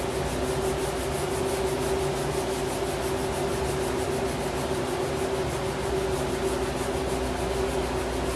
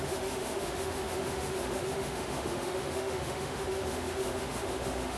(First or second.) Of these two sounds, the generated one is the second